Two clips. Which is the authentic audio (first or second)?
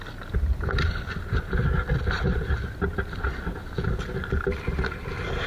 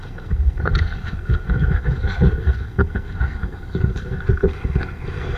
first